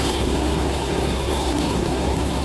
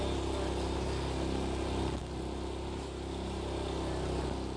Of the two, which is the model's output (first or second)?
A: first